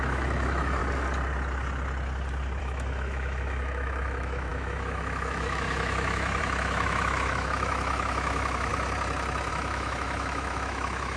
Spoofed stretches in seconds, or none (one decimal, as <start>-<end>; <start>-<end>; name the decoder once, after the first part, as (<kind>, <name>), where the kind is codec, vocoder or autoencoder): 0.0-0.8 (autoencoder, DAC-VAE); 2.6-8.7; 9.5-11.2